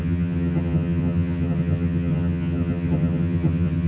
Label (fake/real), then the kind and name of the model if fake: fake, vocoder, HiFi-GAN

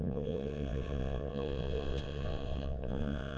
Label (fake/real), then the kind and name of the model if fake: fake, vocoder, WaveNeXt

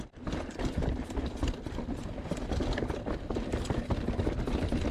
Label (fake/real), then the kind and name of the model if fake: real